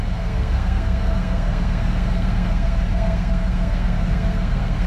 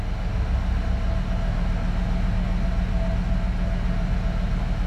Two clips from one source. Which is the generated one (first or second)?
first